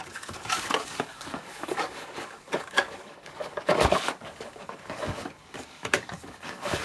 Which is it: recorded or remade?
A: remade